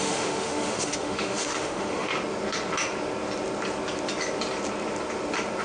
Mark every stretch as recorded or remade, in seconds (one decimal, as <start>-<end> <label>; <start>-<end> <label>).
0.0-2.1 remade; 2.1-5.6 recorded